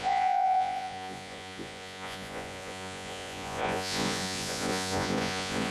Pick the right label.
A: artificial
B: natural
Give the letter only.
A